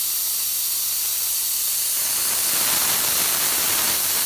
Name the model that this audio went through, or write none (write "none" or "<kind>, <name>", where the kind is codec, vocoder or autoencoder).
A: none